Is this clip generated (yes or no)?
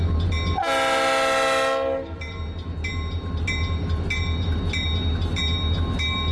no